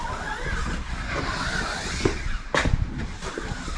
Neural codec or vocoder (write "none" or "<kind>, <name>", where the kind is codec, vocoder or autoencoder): none